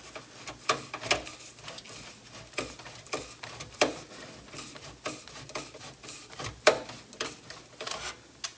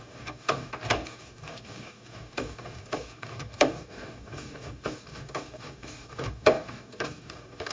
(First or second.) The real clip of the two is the first